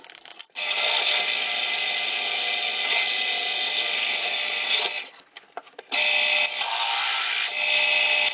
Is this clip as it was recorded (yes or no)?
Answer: yes